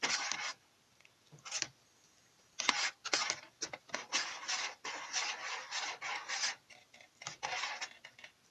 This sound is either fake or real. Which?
real